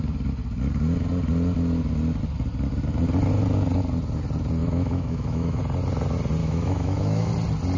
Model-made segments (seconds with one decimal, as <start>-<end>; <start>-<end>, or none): 4.6-5.6; 6.4-7.3